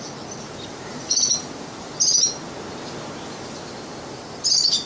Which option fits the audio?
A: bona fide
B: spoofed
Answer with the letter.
A